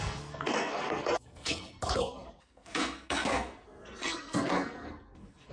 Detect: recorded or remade remade